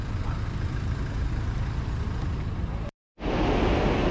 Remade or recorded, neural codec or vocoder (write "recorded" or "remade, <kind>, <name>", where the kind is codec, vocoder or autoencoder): recorded